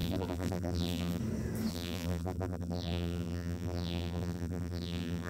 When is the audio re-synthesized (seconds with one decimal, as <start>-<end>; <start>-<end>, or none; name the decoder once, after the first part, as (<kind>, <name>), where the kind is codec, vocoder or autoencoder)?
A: 0.0-1.2 (vocoder, BigVGAN v2); 1.7-5.3